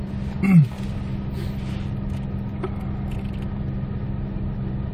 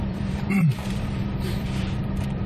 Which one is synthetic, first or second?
second